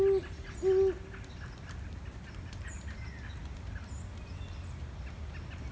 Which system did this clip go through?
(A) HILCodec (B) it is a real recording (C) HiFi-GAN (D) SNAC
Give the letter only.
B